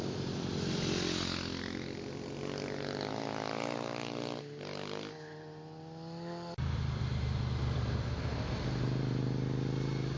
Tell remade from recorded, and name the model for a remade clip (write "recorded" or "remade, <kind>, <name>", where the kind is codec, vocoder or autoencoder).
recorded